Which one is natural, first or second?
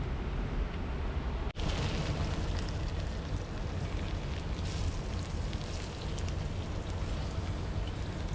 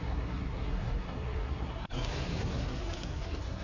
first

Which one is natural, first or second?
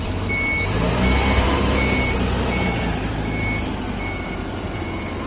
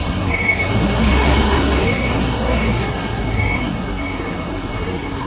first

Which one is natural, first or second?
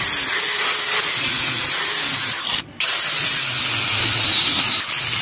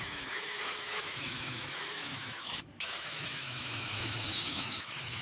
first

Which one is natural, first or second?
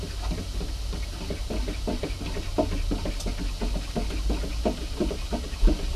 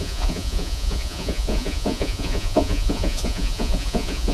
first